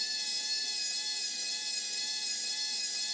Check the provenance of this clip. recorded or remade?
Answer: recorded